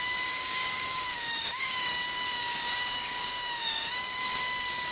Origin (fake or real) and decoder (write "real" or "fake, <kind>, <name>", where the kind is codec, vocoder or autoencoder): fake, codec, DAC